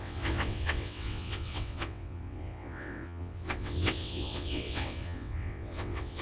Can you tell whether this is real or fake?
fake